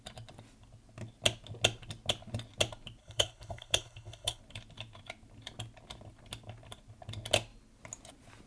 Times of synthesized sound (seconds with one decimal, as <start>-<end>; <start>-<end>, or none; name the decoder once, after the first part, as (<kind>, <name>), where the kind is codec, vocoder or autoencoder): 3.0-4.4 (codec, HILCodec)